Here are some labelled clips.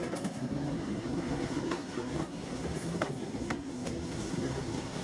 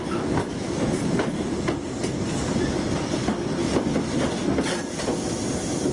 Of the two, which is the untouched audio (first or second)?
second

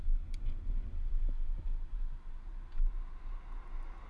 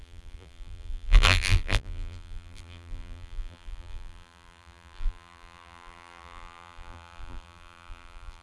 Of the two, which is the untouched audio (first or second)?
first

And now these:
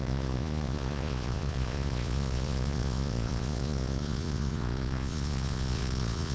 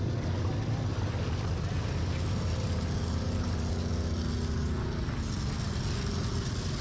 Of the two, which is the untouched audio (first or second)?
second